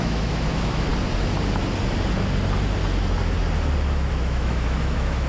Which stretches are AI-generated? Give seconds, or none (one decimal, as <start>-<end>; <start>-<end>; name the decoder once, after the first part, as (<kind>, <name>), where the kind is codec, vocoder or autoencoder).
0.0-0.9 (autoencoder, DAC-VAE); 4.1-5.3